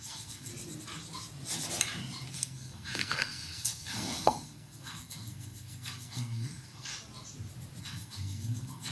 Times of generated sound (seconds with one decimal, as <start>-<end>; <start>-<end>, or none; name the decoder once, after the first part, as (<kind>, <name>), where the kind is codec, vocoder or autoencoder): 0.0-0.5 (codec, SNAC); 2.3-6.9; 7.8-8.9